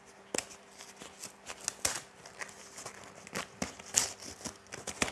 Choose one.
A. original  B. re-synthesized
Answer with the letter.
A